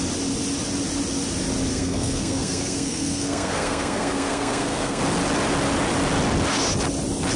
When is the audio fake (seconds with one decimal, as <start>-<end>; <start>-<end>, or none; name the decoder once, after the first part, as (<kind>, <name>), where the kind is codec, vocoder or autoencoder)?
1.7-5.0 (codec, SNAC)